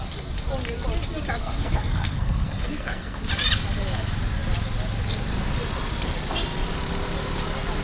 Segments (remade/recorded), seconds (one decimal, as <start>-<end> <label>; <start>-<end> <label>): 0.0-1.4 recorded; 1.4-3.2 remade; 3.2-7.8 recorded